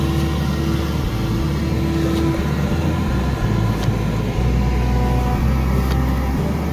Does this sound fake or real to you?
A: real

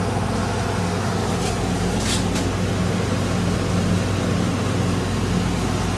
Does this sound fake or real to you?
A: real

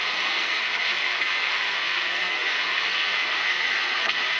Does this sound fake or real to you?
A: fake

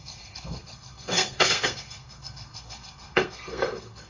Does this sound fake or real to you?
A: fake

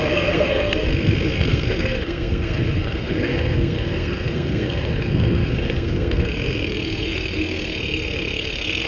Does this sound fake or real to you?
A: fake